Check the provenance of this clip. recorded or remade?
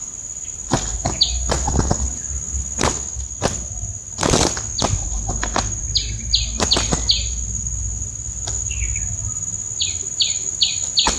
recorded